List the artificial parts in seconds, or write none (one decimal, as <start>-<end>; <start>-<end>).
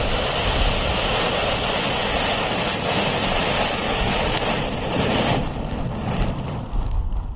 none